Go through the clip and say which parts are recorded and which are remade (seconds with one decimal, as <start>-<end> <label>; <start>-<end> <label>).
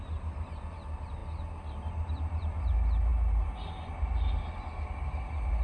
0.0-5.6 recorded